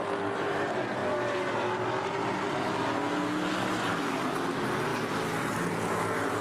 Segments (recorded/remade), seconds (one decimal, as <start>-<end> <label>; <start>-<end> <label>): 0.0-6.4 recorded